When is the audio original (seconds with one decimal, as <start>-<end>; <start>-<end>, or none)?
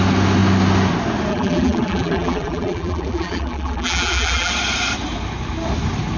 0.0-1.3; 4.5-6.2